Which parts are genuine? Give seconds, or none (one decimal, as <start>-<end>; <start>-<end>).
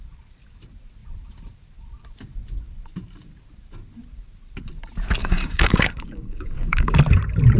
0.0-5.2; 7.0-7.6